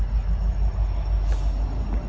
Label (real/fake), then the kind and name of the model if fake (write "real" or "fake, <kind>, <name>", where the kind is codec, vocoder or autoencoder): real